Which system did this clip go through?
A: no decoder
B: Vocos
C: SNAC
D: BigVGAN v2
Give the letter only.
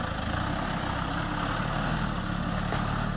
A